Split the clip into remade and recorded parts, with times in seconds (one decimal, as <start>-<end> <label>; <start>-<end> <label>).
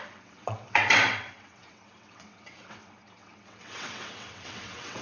0.0-5.0 remade